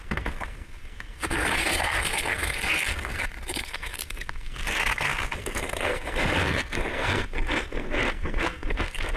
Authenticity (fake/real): fake